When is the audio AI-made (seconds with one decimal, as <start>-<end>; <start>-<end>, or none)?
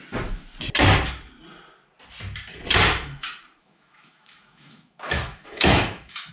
3.6-6.3